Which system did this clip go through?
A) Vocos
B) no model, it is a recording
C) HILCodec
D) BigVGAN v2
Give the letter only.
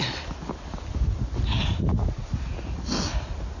B